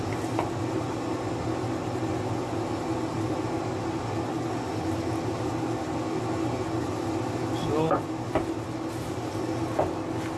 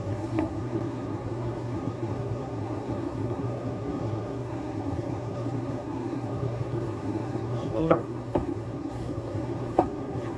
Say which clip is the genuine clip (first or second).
first